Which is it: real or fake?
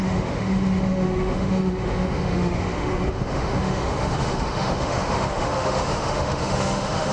fake